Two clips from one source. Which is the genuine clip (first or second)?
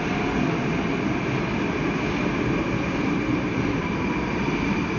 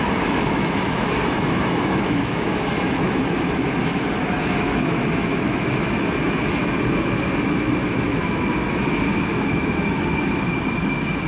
first